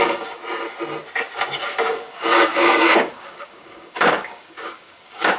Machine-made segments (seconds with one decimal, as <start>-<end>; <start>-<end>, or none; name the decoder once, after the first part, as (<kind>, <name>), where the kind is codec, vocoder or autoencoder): 0.0-0.4 (codec, DAC); 1.9-5.4